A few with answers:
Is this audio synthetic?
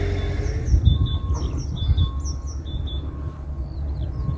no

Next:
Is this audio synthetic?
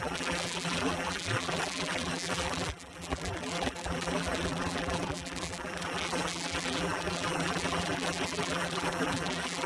yes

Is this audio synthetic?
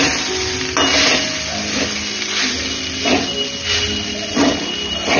no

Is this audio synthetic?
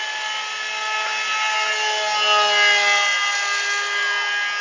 no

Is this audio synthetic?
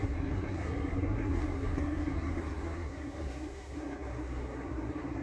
yes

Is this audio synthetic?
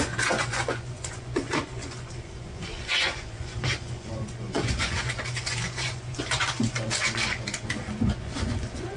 yes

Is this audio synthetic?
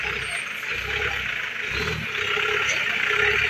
no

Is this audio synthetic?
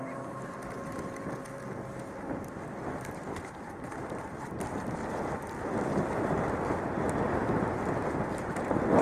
no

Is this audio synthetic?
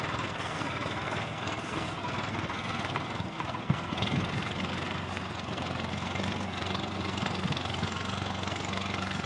yes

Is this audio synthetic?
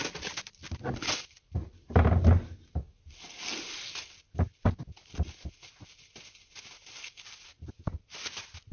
no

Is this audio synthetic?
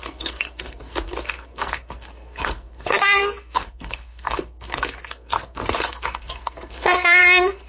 yes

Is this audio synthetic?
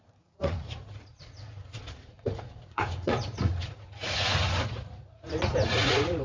yes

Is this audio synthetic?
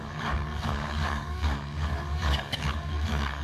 yes